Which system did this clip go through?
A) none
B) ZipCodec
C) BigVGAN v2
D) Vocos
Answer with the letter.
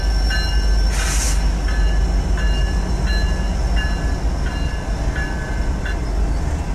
A